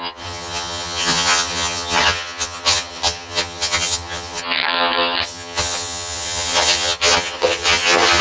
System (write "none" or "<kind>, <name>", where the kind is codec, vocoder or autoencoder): vocoder, HiFi-GAN